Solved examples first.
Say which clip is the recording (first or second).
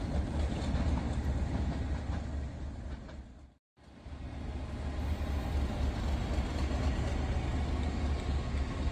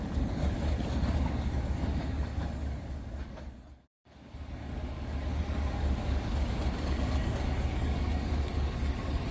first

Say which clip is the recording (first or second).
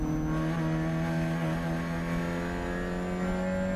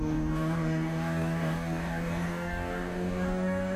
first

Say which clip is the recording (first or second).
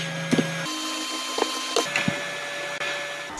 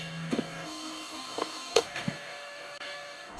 first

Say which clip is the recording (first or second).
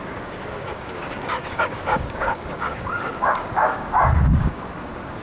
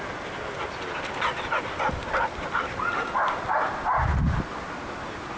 second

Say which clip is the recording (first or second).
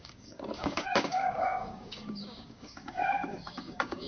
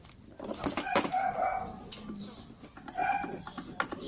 second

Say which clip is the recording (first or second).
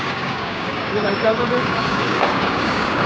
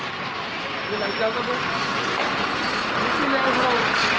second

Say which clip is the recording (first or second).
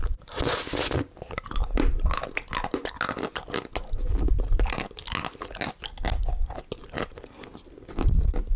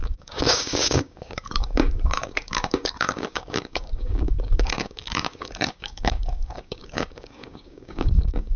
first